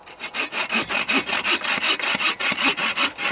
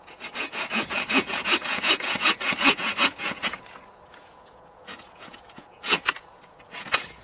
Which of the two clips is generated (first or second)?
second